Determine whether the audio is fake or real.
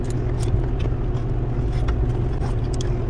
real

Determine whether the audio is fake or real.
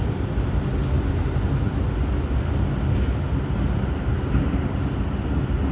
real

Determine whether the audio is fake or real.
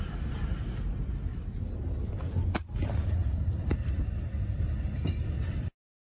real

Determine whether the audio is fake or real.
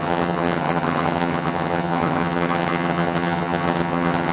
fake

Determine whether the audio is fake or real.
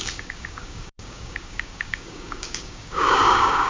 fake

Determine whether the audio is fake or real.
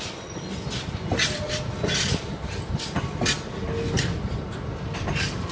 real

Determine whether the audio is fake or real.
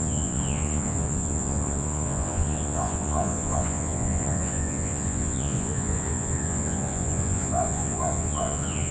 fake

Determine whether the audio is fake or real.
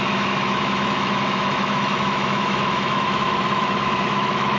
fake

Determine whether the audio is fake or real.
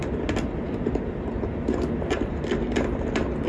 real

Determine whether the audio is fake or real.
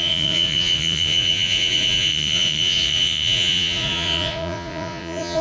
fake